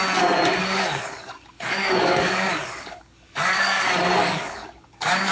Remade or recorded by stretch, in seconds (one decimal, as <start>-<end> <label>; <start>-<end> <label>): 0.0-0.6 recorded; 0.6-3.8 remade; 3.8-4.2 recorded; 4.2-5.3 remade